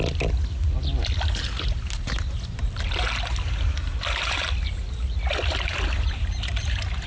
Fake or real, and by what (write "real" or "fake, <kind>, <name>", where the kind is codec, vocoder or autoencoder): real